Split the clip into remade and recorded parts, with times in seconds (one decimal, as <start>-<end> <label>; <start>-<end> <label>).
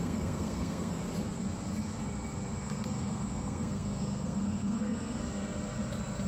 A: 0.0-1.0 remade; 1.0-2.6 recorded; 2.6-5.2 remade; 5.2-6.3 recorded